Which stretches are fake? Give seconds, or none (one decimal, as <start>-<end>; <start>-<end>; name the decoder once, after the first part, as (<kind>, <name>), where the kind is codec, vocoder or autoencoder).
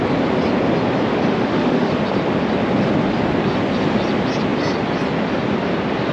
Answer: 1.3-1.9 (autoencoder, DAC-VAE)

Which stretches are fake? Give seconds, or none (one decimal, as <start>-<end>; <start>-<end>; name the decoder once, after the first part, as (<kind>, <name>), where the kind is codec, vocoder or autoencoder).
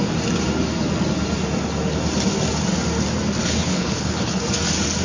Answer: 3.4-4.4 (codec, HILCodec)